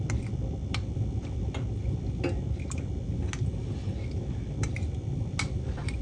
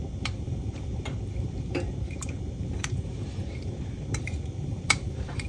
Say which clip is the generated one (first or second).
second